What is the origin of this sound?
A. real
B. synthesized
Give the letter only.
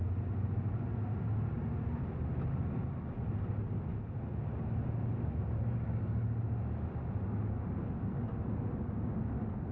A